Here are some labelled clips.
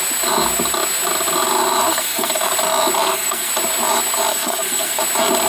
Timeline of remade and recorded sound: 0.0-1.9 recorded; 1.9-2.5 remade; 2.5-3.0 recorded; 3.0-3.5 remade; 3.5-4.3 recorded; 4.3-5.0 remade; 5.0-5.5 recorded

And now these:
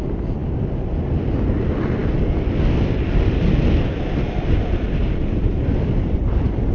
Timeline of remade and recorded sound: 0.0-6.7 recorded

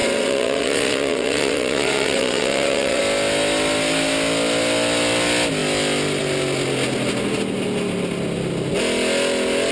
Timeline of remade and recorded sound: 0.0-3.0 remade; 3.0-9.7 recorded

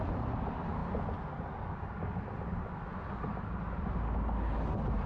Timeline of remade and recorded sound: 0.0-5.1 recorded

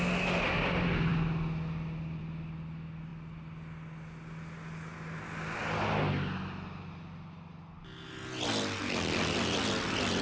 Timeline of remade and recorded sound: 0.0-10.2 recorded

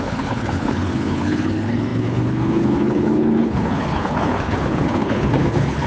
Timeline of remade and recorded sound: 0.0-5.9 remade

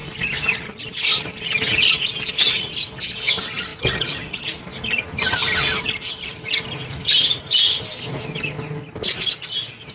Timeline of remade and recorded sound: 0.0-1.4 remade; 1.4-3.7 recorded; 3.7-7.8 remade; 7.8-9.9 recorded